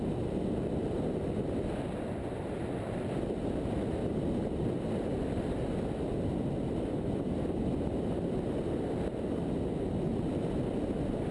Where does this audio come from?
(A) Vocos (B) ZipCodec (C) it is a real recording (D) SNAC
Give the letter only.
C